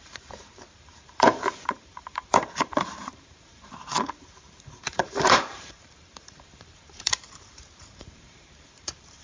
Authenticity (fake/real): fake